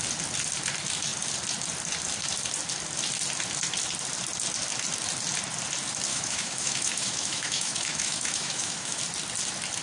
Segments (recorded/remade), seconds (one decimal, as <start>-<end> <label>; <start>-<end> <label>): 0.0-6.1 recorded; 6.1-9.0 remade; 9.0-9.8 recorded